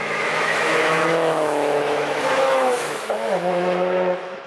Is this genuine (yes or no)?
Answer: no